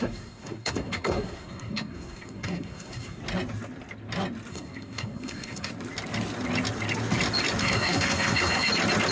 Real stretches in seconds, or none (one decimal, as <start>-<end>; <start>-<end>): 3.2-4.5; 5.7-7.6; 8.7-9.1